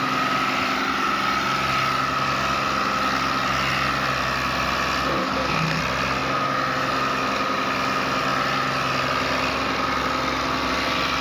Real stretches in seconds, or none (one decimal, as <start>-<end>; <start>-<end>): 0.0-5.2; 5.8-11.2